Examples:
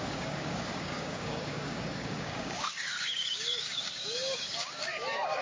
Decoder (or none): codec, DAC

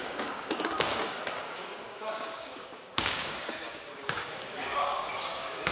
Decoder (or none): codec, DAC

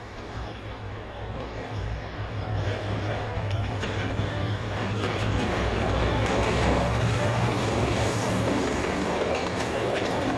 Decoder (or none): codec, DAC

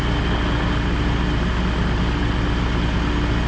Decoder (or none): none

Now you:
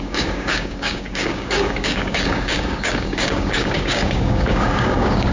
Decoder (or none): codec, DAC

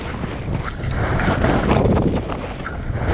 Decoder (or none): none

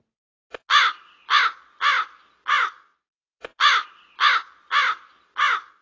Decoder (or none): none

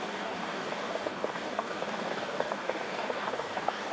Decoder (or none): codec, DAC